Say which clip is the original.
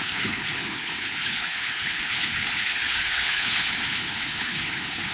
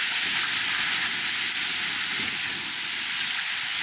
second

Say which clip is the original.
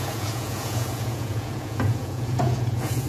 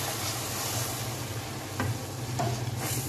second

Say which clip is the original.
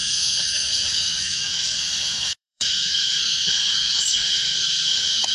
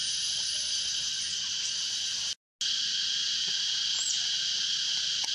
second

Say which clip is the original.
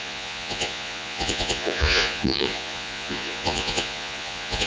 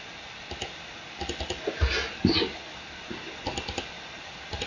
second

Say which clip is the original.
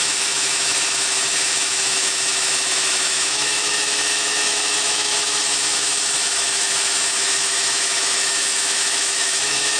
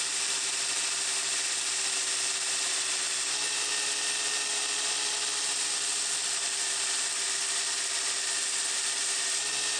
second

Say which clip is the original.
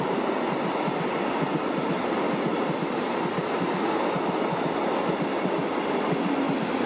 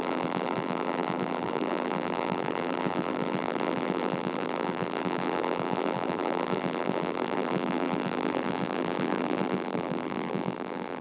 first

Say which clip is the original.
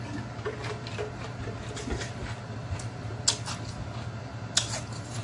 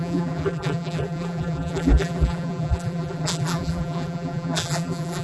first